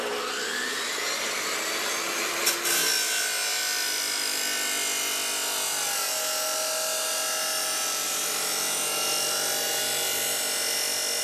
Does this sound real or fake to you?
real